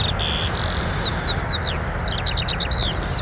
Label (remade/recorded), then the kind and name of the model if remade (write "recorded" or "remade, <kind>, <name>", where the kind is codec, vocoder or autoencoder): recorded